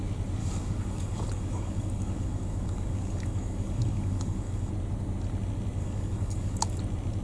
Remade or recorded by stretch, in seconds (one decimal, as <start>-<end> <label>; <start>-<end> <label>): 0.0-0.4 recorded; 0.4-4.7 remade; 4.7-5.8 recorded; 5.8-6.8 remade; 6.8-7.2 recorded